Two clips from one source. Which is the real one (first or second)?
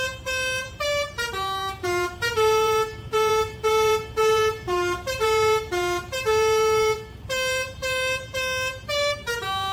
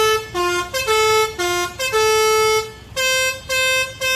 second